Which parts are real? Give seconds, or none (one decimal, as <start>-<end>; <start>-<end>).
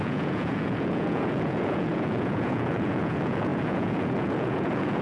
none